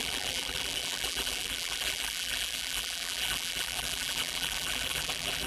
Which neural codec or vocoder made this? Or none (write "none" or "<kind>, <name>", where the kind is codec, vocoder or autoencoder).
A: vocoder, BigVGAN v2